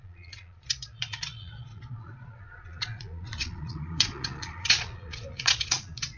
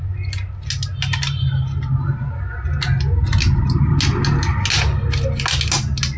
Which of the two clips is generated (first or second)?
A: first